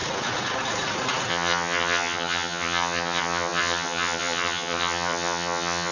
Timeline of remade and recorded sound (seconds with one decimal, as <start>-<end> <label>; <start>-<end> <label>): 0.0-1.3 recorded; 1.3-5.9 remade